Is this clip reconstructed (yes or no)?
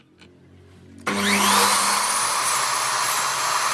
no